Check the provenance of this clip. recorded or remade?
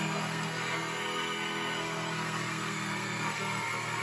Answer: remade